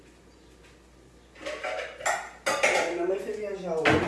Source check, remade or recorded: recorded